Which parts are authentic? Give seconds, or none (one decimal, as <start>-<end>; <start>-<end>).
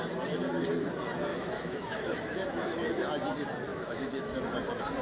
0.0-1.3; 2.9-3.7; 4.4-5.0